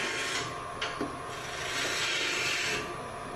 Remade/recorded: recorded